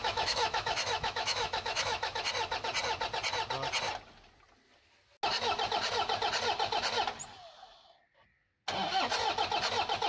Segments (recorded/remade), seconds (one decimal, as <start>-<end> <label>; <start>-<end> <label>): 0.0-2.2 remade; 2.2-10.1 recorded